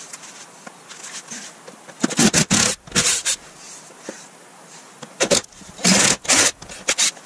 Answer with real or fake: real